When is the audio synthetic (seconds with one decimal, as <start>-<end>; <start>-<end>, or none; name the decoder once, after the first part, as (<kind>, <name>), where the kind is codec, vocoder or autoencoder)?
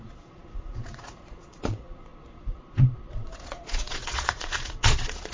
0.0-5.3 (vocoder, Vocos)